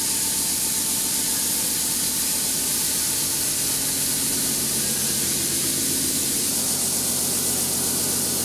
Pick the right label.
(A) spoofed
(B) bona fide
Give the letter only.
B